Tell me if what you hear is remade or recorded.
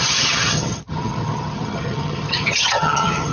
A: remade